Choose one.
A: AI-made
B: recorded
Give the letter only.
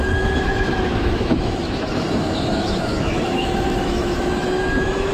A